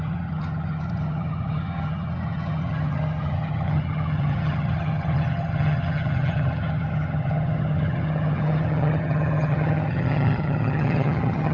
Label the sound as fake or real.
fake